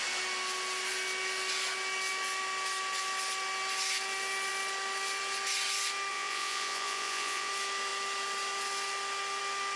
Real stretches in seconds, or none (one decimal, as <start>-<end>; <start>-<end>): 0.0-6.1; 7.5-9.8